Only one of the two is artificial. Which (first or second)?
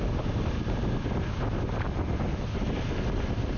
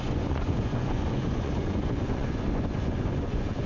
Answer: second